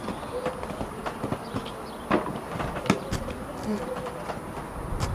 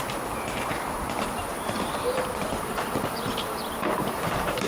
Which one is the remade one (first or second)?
second